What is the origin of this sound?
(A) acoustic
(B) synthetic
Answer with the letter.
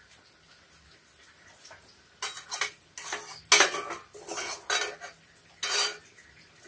A